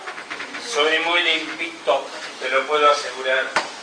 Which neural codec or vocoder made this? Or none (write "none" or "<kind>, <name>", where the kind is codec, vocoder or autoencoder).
autoencoder, DAC-VAE